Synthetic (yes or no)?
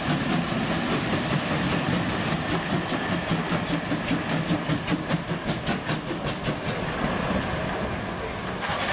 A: no